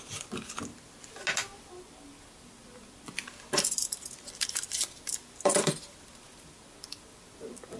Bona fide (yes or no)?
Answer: yes